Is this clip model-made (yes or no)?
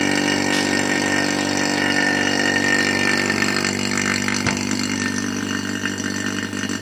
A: no